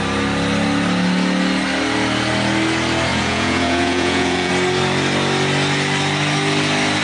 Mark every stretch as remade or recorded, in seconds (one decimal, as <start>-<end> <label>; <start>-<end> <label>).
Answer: 0.0-3.1 recorded; 3.1-4.5 remade; 4.5-7.0 recorded